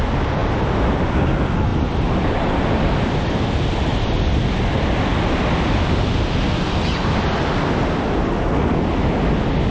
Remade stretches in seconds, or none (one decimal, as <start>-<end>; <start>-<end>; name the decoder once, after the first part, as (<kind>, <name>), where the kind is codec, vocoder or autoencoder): 1.7-4.2 (vocoder, BigVGAN v2)